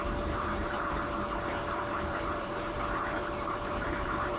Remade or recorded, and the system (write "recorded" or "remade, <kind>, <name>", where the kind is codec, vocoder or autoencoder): remade, vocoder, BigVGAN v2